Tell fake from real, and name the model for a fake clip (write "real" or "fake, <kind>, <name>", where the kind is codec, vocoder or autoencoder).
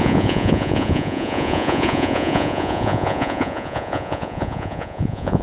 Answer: fake, vocoder, Vocos